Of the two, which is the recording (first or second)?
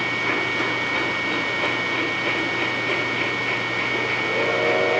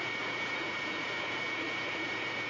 first